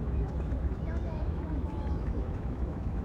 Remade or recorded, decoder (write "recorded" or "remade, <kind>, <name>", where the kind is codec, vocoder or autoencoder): remade, autoencoder, DAC-VAE